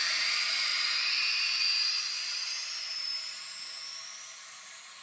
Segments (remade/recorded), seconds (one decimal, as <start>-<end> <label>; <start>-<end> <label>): 0.0-5.0 recorded